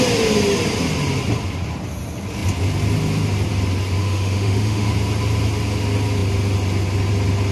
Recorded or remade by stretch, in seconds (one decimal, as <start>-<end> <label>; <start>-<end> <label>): 0.0-4.0 recorded; 4.0-4.9 remade; 4.9-7.5 recorded